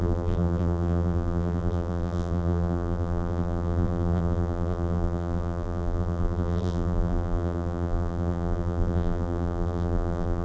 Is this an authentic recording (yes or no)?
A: no